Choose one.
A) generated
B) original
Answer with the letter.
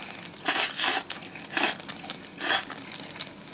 B